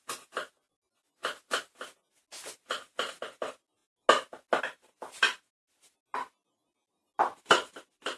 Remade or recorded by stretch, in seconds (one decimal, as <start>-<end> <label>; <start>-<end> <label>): 0.0-8.2 recorded